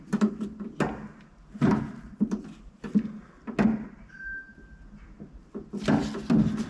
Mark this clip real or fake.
real